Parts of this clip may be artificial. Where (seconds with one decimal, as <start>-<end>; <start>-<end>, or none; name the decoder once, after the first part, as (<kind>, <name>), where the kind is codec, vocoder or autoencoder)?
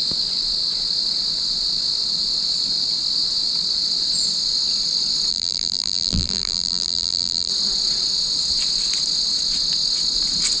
5.3-7.5 (vocoder, BigVGAN v2)